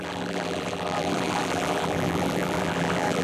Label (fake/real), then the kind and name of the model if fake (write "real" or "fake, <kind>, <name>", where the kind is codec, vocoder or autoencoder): fake, vocoder, BigVGAN v2